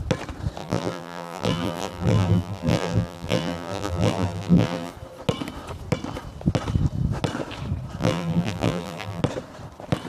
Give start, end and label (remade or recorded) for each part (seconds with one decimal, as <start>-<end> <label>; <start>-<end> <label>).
0.0-0.6 recorded; 0.6-4.9 remade; 4.9-8.0 recorded; 8.0-9.2 remade; 9.2-10.1 recorded